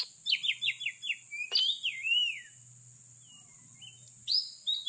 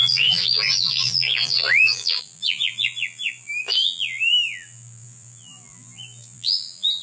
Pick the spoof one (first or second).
second